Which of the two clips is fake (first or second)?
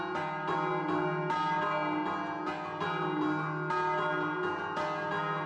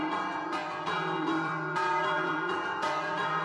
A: second